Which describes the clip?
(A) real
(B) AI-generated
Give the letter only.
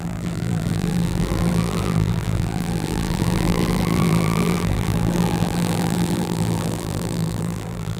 B